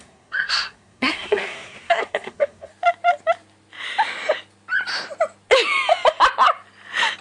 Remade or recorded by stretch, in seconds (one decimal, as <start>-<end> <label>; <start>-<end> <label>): 0.0-2.7 remade; 2.7-7.2 recorded